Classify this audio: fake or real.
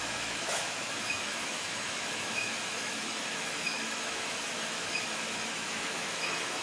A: fake